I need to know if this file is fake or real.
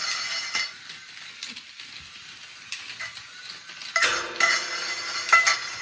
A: real